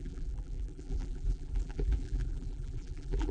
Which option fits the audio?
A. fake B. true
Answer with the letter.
A